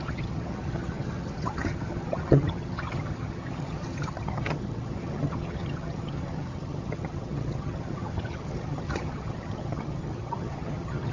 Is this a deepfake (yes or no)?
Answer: yes